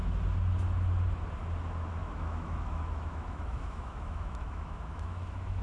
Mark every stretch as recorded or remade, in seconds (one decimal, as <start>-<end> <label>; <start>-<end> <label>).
0.0-2.0 recorded; 2.0-5.6 remade